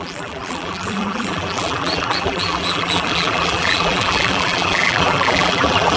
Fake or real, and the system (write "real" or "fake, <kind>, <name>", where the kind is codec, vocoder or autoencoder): fake, vocoder, BigVGAN v2